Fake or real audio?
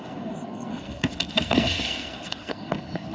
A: fake